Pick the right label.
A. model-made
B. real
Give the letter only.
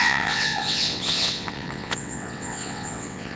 A